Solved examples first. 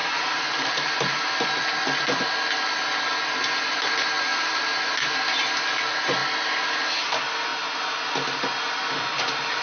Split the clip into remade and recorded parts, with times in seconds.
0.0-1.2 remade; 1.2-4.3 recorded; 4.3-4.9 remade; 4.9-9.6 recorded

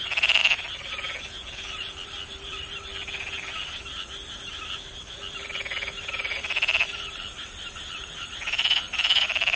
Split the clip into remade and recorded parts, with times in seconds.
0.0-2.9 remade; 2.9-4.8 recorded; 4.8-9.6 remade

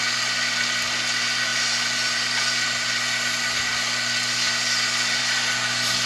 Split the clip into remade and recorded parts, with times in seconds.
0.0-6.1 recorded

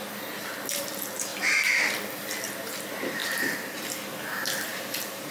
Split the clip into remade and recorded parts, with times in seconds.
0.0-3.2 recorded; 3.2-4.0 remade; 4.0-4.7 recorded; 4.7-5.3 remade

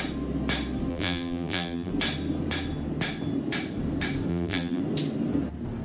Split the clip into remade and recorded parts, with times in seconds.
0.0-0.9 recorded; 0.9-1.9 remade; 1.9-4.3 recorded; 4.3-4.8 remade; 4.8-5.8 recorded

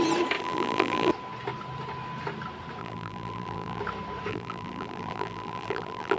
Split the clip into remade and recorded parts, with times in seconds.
0.0-0.4 recorded; 0.4-1.1 remade; 1.1-2.8 recorded; 2.8-3.8 remade; 3.8-4.3 recorded; 4.3-6.2 remade

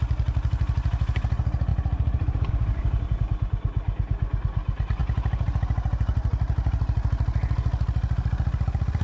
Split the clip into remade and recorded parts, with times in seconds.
0.0-1.7 recorded; 1.7-2.5 remade; 2.5-5.0 recorded; 5.0-6.7 remade; 6.7-9.0 recorded